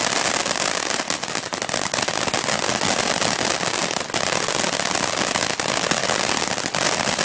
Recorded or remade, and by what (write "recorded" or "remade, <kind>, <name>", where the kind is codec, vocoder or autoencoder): recorded